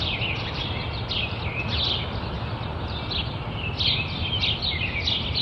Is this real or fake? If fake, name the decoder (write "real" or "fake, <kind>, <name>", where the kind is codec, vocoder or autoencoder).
real